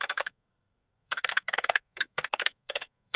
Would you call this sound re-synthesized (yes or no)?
yes